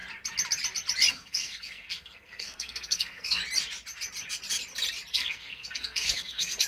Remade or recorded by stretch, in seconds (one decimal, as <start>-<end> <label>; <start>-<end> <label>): 0.0-1.1 recorded; 1.1-3.4 remade; 3.4-5.1 recorded; 5.1-6.7 remade

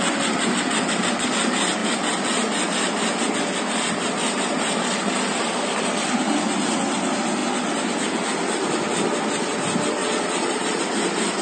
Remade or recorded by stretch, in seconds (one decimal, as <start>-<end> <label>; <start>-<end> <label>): 0.0-10.0 recorded; 10.0-10.8 remade; 10.8-11.4 recorded

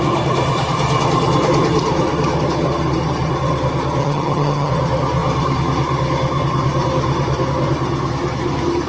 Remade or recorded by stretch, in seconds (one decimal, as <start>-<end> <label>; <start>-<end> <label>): 0.0-4.0 recorded; 4.0-4.7 remade; 4.7-8.9 recorded

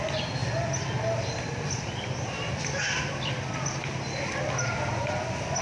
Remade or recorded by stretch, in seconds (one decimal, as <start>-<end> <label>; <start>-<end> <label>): 0.0-5.6 recorded

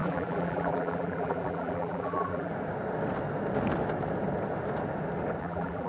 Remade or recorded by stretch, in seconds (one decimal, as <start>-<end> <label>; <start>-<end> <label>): 0.0-2.5 remade; 2.5-5.4 recorded; 5.4-5.9 remade

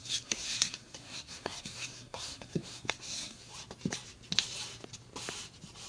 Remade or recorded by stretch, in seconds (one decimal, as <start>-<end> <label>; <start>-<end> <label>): 0.0-3.5 remade; 3.5-5.9 recorded

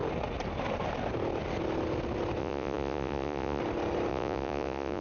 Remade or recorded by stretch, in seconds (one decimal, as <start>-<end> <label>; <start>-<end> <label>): 0.0-2.4 recorded; 2.4-3.6 remade; 3.6-4.1 recorded; 4.1-5.0 remade